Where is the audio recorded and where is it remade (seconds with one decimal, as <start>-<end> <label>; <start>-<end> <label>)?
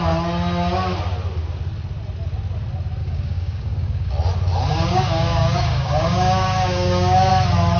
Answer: 0.0-3.0 recorded; 3.0-4.1 remade; 4.1-4.7 recorded; 4.7-7.3 remade; 7.3-7.8 recorded